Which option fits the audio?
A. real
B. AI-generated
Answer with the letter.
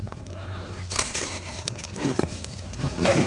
B